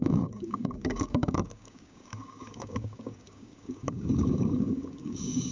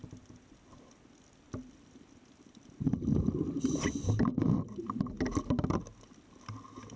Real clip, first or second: second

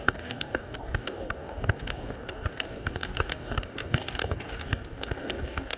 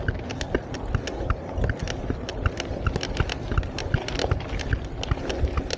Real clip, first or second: second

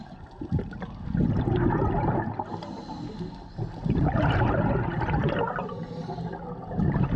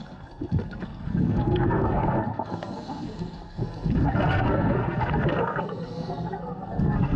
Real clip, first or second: first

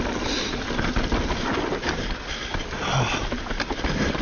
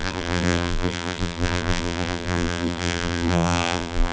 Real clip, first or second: first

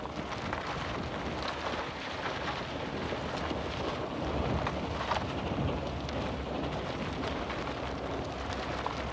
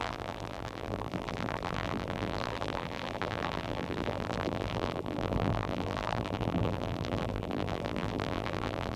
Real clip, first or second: first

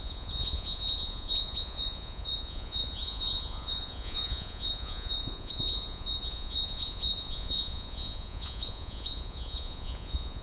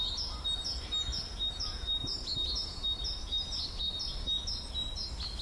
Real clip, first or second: second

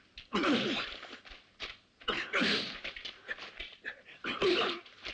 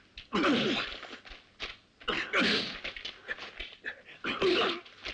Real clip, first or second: second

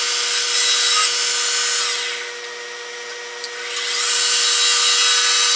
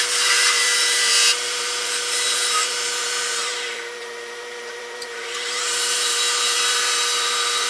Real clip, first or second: first